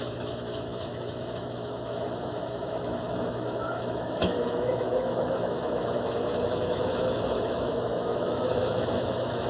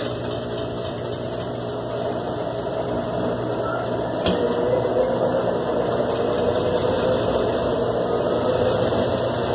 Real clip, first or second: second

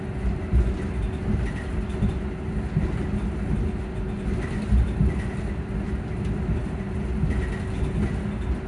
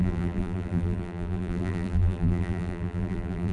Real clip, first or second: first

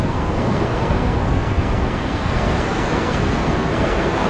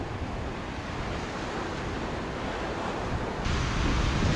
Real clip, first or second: second